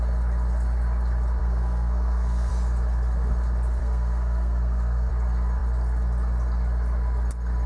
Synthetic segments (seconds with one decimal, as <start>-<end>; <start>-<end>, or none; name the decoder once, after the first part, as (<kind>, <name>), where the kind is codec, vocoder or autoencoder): 1.4-2.5 (codec, SNAC); 3.8-5.1